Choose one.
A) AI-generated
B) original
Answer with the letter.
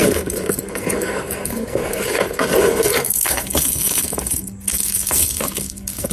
A